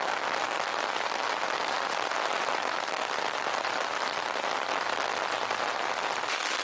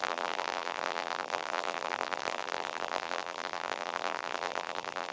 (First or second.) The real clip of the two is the first